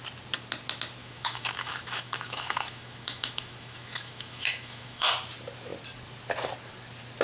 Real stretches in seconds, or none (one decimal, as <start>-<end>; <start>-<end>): 0.0-1.0; 5.1-7.2